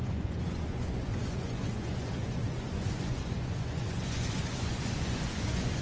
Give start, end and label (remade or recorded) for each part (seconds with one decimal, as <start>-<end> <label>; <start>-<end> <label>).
0.0-5.8 remade